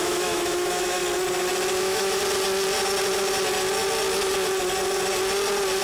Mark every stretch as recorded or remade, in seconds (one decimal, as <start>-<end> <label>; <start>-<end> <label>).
0.0-1.0 remade; 1.0-1.8 recorded; 1.8-2.2 remade; 2.2-5.8 recorded